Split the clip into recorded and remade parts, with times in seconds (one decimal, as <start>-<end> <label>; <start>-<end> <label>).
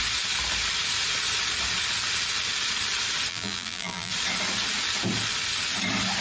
0.0-3.3 recorded; 3.3-4.1 remade; 4.1-6.2 recorded